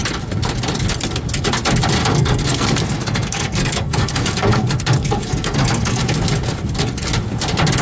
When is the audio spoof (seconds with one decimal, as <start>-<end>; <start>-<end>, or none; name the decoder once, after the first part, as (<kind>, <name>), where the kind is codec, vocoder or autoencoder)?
2.0-6.0 (codec, SNAC)